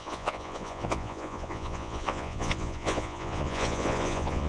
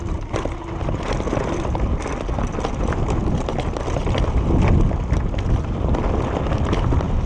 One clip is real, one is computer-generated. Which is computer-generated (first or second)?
first